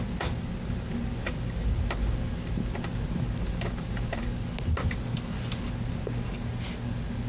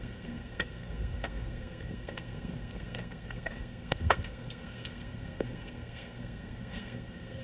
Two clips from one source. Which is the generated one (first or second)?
second